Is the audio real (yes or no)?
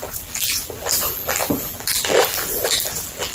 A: no